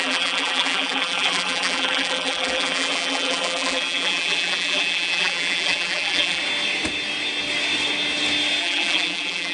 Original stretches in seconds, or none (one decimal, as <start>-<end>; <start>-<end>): 6.4-8.6